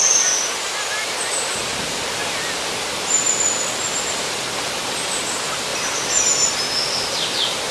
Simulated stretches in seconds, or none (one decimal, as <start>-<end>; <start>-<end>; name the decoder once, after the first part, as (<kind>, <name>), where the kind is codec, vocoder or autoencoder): none